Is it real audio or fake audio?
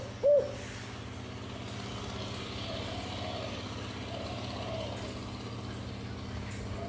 real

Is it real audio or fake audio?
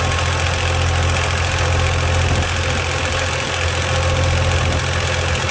real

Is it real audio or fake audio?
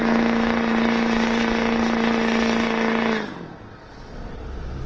real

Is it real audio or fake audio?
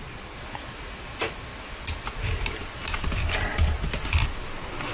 real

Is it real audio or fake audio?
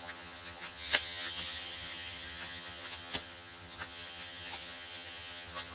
fake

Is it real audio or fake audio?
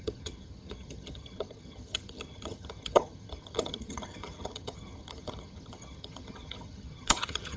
fake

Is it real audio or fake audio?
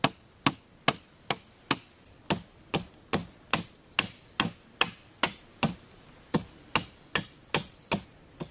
real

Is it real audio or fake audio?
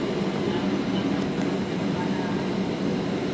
real